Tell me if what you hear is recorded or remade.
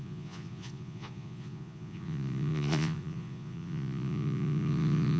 remade